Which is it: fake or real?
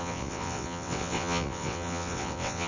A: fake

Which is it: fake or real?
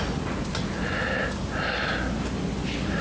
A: real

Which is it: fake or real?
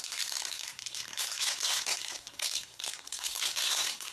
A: fake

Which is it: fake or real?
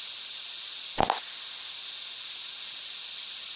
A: real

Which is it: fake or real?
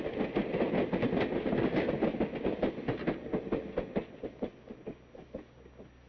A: real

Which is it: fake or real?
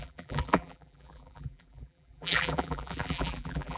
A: fake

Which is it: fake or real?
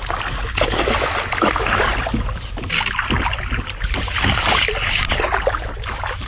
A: real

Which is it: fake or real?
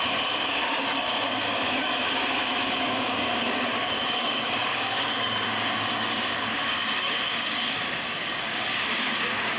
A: fake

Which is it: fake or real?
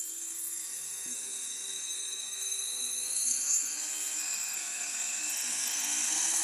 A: fake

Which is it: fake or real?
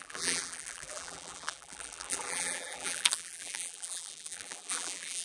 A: fake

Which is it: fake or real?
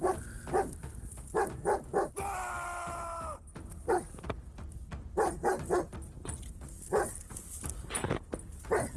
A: real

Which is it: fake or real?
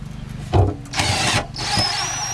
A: real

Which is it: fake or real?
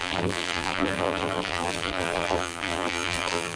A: fake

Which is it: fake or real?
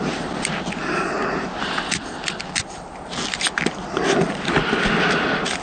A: real